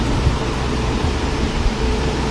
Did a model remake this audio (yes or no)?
yes